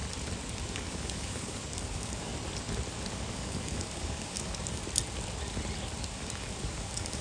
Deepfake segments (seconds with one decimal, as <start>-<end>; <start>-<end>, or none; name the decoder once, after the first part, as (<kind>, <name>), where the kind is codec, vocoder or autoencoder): 0.5-2.3 (codec, DAC); 3.1-4.8; 6.1-7.2